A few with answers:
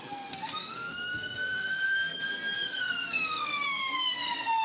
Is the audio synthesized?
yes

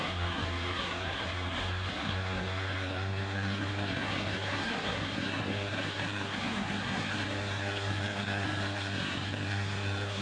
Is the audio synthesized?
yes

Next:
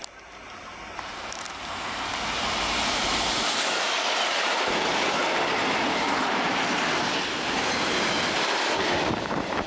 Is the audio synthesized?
no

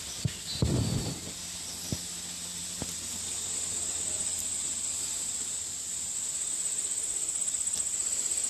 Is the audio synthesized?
no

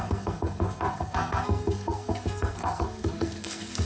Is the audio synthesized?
yes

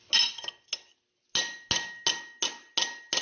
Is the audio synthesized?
no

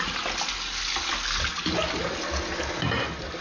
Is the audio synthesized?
no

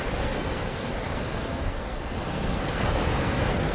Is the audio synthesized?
yes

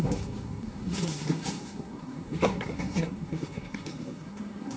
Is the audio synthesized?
yes